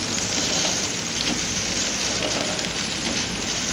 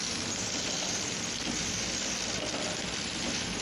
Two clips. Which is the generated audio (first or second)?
first